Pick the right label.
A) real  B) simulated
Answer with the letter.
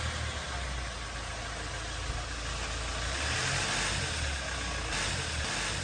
A